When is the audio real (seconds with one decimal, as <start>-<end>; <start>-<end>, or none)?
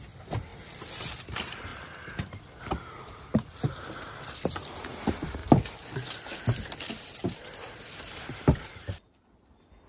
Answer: 1.7-3.0; 5.4-7.9